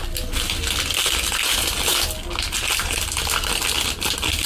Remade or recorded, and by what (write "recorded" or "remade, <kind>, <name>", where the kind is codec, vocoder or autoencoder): recorded